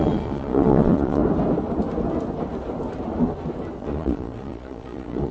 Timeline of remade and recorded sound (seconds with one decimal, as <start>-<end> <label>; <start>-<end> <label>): 0.0-1.2 remade; 1.2-3.8 recorded; 3.8-5.3 remade